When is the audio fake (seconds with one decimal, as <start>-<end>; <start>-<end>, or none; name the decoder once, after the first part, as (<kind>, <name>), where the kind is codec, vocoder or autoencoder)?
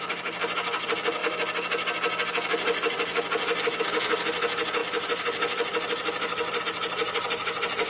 none